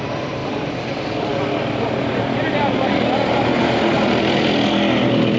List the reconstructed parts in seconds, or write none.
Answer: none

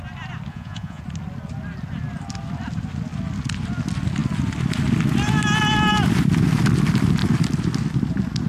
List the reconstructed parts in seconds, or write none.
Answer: 0.5-1.0 (vocoder, Vocos)

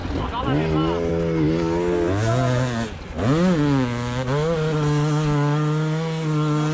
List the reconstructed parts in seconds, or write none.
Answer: none